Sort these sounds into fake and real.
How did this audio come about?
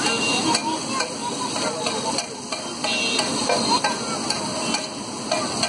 real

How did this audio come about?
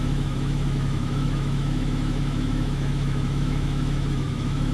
fake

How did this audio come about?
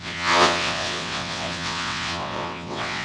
fake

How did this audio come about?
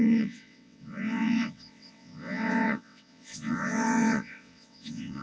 fake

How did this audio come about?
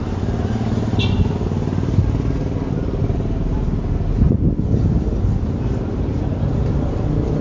real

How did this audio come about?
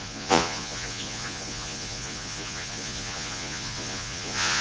fake